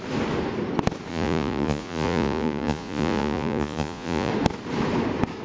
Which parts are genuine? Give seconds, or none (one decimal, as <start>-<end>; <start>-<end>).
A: 0.0-1.1; 4.3-5.4